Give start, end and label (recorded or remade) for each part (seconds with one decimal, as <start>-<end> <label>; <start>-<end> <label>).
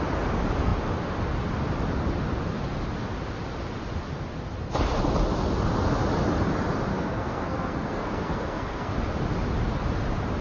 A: 0.0-6.9 recorded; 6.9-8.9 remade; 8.9-10.4 recorded